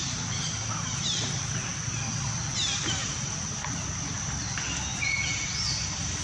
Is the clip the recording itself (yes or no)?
yes